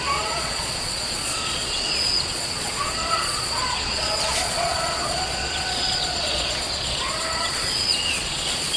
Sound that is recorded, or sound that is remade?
remade